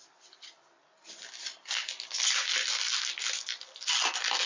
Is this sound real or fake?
real